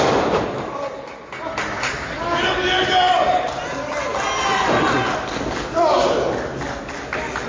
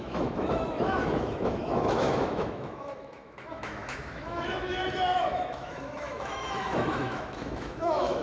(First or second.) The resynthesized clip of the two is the second